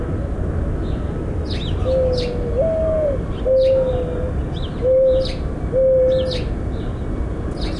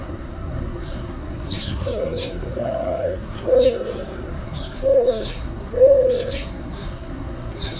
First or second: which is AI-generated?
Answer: second